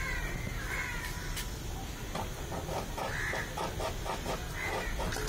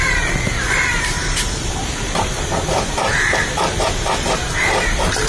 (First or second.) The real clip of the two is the first